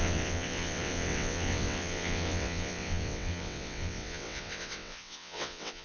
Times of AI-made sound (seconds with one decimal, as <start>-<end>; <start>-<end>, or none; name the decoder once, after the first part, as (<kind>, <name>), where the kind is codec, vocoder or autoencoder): 0.0-5.8 (vocoder, WaveNeXt)